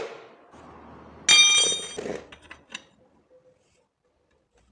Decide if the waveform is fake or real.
real